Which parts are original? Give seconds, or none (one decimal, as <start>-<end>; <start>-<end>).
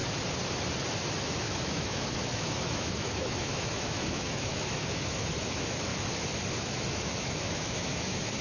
0.0-1.2; 5.9-6.5